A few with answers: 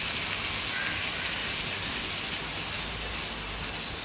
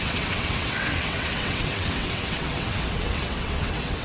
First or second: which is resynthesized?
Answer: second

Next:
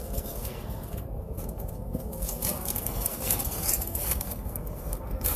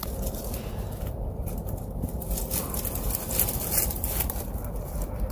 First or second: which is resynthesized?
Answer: first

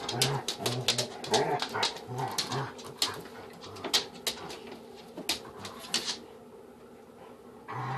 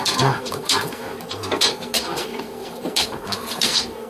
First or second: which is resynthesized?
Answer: second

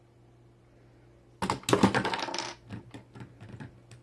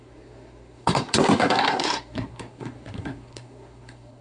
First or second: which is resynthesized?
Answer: second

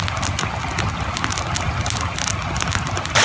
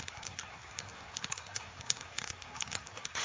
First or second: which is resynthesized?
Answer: second